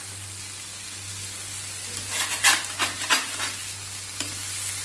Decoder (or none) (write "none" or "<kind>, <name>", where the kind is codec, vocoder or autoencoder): none